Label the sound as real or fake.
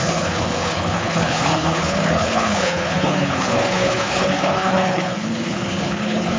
fake